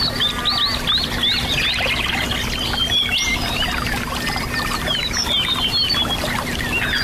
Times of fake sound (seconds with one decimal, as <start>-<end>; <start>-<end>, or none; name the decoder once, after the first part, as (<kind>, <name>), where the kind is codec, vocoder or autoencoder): 3.3-4.6 (vocoder, BigVGAN v2)